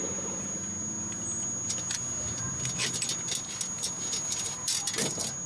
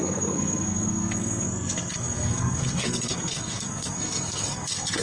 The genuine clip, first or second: first